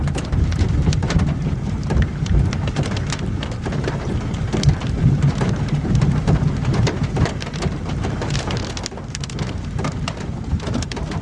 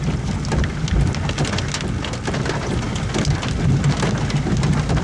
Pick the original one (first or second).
second